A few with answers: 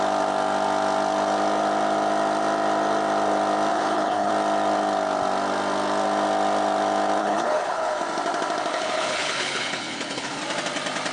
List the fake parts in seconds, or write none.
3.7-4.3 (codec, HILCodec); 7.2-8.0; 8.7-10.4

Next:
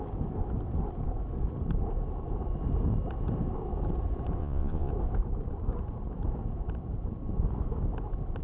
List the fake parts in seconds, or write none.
4.4-4.9 (vocoder, Vocos)